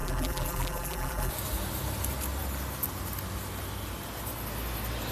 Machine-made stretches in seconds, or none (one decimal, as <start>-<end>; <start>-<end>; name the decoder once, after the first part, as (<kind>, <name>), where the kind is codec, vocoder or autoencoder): 0.0-1.3 (vocoder, BigVGAN v2)